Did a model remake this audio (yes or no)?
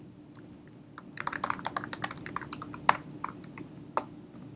no